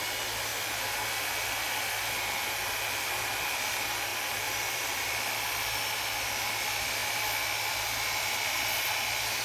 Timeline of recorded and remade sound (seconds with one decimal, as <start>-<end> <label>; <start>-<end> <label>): 0.0-4.1 recorded; 4.1-5.2 remade; 5.2-7.0 recorded; 7.0-9.4 remade